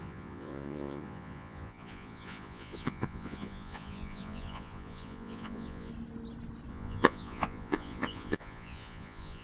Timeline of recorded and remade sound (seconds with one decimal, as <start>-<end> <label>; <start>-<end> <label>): 0.0-5.9 remade; 5.9-6.7 recorded; 6.7-9.4 remade